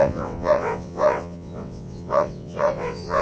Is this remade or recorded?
remade